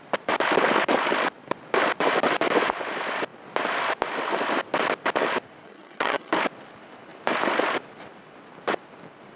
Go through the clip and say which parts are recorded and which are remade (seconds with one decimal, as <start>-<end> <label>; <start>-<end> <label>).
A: 0.0-5.6 recorded; 5.6-6.3 remade; 6.3-9.4 recorded